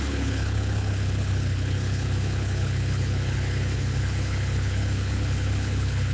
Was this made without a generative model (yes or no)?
no